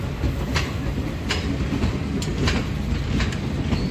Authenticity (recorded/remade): recorded